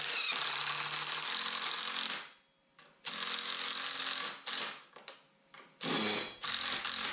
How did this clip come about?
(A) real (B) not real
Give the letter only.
A